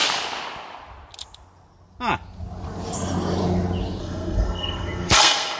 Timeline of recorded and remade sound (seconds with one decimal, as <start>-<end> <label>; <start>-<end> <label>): 0.0-4.0 recorded; 4.0-5.6 remade

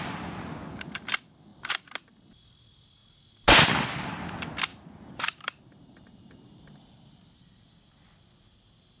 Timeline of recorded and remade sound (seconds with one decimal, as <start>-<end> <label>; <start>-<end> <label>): 0.0-4.7 recorded; 4.7-7.2 remade; 7.2-9.0 recorded

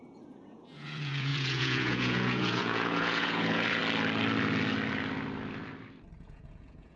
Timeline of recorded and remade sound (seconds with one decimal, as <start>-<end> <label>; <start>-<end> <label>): 0.0-3.8 remade; 3.8-6.2 recorded; 6.2-7.0 remade

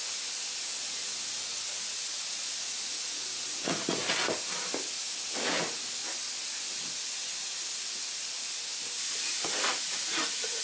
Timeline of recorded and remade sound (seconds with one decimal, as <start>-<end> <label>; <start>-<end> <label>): 0.0-1.5 recorded; 1.5-4.1 remade; 4.1-9.7 recorded; 9.7-10.6 remade

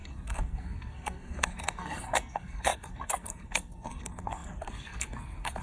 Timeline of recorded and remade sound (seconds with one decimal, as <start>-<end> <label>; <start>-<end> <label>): 0.0-5.6 remade

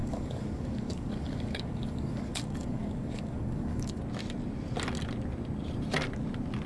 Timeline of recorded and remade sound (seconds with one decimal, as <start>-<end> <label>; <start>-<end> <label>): 0.0-4.0 remade; 4.0-6.7 recorded

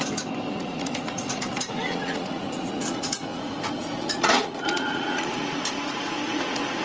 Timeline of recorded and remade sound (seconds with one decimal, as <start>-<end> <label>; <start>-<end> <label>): 0.0-0.5 recorded; 0.5-6.8 remade

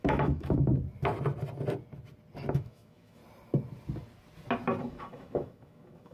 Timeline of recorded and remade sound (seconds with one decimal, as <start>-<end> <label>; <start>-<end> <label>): 0.0-0.7 remade; 0.7-2.5 recorded; 2.5-3.2 remade; 3.2-4.8 recorded; 4.8-6.1 remade